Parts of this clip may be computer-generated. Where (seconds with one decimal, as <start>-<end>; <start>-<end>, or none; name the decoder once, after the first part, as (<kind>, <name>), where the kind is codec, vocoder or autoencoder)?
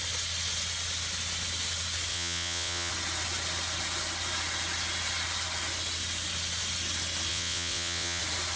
2.1-2.9 (vocoder, WaveNeXt); 7.3-8.2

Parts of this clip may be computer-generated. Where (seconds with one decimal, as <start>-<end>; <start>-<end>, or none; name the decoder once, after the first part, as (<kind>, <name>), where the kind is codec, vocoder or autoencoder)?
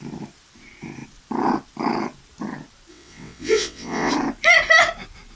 2.9-4.1 (vocoder, WaveNeXt)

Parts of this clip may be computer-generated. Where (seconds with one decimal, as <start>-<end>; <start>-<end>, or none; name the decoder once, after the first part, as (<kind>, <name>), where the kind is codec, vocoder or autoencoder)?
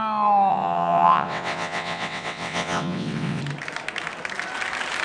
0.5-3.4 (vocoder, WaveNeXt)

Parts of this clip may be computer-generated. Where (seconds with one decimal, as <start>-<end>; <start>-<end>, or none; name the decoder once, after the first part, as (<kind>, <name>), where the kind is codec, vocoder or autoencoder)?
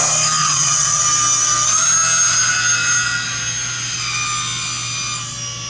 0.4-1.0 (vocoder, WaveNeXt)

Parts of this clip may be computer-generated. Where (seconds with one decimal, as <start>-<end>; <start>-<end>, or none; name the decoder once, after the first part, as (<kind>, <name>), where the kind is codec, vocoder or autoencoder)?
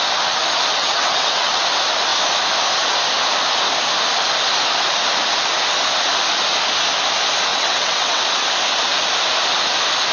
0.8-1.5 (vocoder, WaveNeXt); 7.5-8.2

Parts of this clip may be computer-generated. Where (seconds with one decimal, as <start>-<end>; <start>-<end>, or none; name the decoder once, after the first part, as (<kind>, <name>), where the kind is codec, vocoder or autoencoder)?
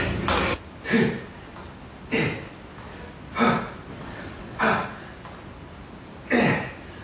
3.9-4.6 (vocoder, WaveNeXt)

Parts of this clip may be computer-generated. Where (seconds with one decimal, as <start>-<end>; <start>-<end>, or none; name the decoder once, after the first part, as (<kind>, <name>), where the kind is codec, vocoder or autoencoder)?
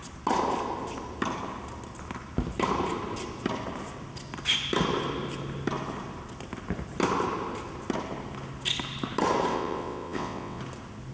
9.5-10.6 (vocoder, WaveNeXt)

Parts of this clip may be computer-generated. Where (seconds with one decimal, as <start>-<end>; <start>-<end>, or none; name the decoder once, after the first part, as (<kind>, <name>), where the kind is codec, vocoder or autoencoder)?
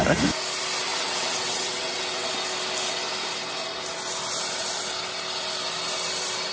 0.9-2.3 (vocoder, WaveNeXt)